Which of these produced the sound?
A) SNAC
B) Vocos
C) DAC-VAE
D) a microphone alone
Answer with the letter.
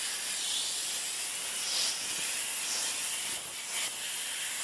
D